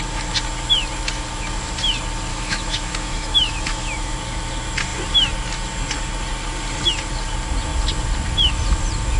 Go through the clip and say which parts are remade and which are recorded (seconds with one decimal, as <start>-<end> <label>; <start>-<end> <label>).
0.0-2.3 recorded; 2.3-4.1 remade; 4.1-9.2 recorded